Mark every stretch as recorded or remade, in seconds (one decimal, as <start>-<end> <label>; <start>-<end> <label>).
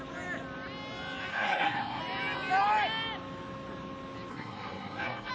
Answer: 0.0-1.3 recorded; 1.3-2.0 remade; 2.0-4.3 recorded; 4.3-5.3 remade